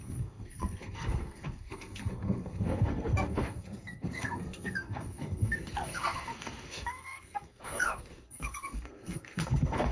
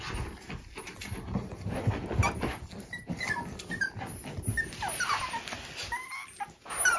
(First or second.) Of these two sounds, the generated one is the first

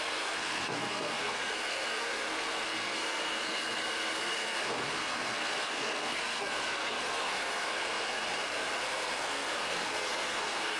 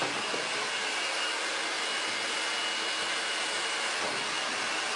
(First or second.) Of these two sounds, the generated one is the first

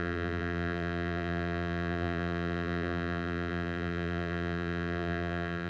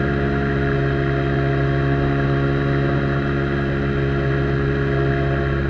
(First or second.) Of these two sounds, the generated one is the first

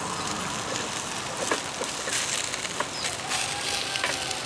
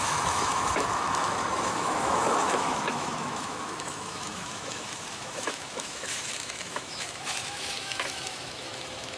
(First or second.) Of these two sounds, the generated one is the second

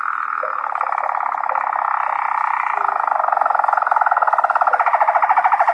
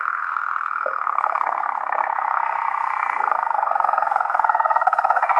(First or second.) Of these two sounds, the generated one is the second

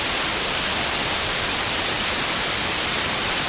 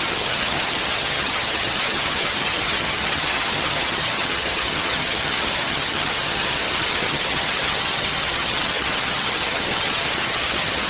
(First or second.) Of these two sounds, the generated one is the second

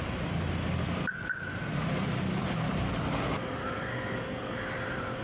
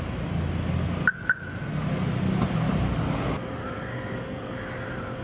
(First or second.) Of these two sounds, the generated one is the first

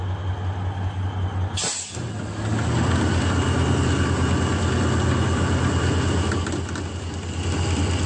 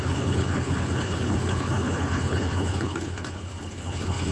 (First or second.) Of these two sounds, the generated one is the second